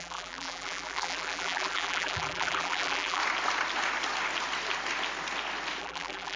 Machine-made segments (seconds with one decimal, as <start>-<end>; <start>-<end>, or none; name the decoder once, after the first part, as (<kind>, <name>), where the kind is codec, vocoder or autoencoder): 0.0-3.2 (vocoder, BigVGAN v2); 5.8-6.4